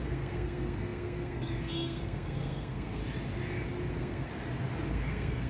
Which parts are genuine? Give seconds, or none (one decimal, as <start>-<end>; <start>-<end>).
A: 3.0-3.9; 4.3-4.9